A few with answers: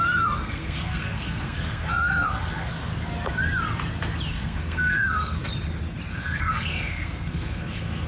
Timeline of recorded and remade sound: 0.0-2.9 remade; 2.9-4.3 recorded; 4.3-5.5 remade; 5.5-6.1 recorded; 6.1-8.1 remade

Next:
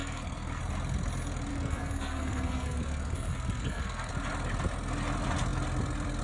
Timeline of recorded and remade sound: 0.0-0.6 remade; 0.6-1.5 recorded; 1.5-4.1 remade; 4.1-6.2 recorded

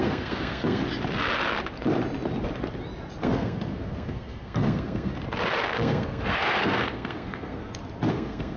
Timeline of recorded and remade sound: 0.0-0.8 remade; 0.8-3.2 recorded; 3.2-5.1 remade; 5.1-5.7 recorded; 5.7-7.6 remade; 7.6-8.1 recorded; 8.1-8.6 remade

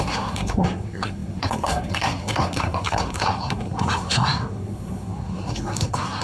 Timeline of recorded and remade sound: 0.0-6.2 remade